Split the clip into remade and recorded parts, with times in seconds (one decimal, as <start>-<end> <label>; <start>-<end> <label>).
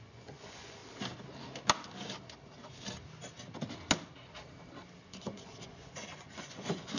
0.0-0.8 remade; 0.8-5.0 recorded; 5.0-7.0 remade